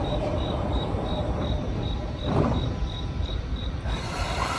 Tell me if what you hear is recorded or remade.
remade